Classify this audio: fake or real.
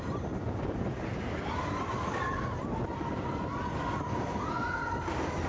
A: real